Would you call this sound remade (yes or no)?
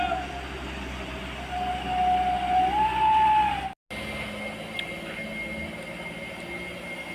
no